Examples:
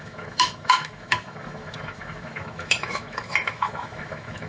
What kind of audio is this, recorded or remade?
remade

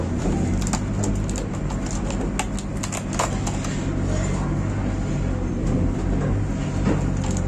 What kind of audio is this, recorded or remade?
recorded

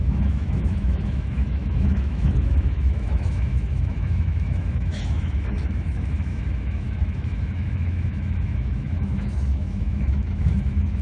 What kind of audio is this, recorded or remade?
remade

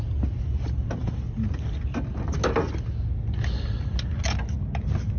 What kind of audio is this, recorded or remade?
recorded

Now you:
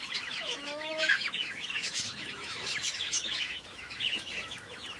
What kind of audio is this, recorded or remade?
remade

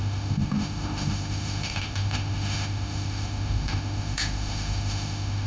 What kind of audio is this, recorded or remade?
remade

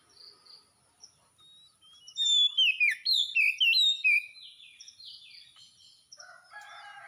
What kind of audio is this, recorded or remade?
recorded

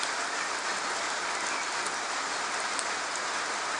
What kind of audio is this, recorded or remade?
recorded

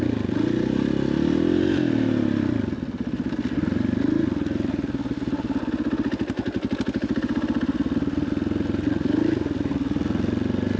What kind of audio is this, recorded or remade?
recorded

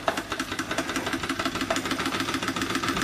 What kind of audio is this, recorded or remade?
recorded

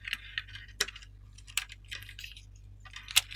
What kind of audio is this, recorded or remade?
recorded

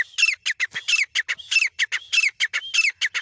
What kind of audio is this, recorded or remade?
recorded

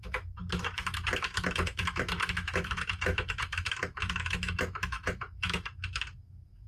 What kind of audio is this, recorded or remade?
remade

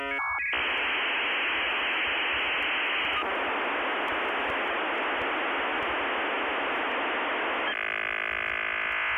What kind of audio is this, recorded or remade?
recorded